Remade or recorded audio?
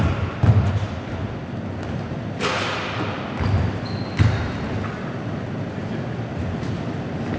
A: recorded